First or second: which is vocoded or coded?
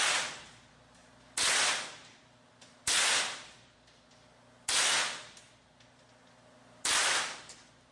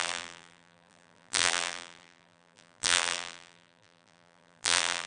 second